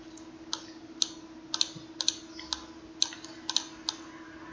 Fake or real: real